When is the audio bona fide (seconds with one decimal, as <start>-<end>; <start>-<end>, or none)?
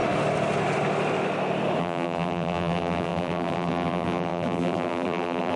0.0-1.8